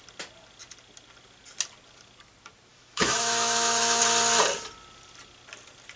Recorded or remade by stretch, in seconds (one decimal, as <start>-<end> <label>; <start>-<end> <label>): 0.0-2.7 recorded; 2.7-4.0 remade; 4.0-6.0 recorded